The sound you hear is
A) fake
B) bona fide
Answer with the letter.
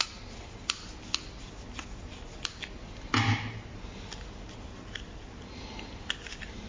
B